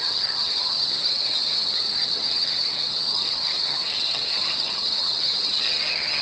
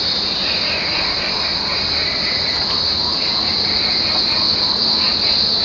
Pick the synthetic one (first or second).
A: first